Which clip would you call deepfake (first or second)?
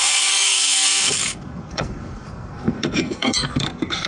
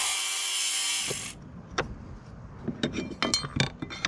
first